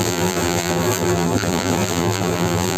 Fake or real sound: fake